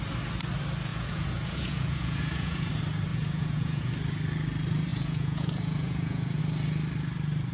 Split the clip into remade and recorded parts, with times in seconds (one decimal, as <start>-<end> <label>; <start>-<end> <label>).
0.0-0.9 recorded; 0.9-2.7 remade; 2.7-3.1 recorded; 3.1-3.9 remade; 3.9-4.9 recorded; 4.9-6.4 remade; 6.4-7.5 recorded